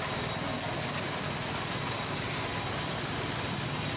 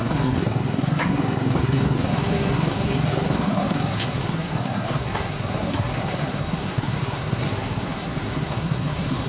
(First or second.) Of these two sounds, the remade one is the second